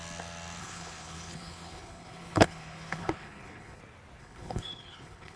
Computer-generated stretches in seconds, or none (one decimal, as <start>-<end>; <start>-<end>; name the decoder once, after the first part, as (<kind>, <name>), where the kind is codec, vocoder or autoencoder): 0.6-3.8 (codec, HILCodec); 4.2-5.4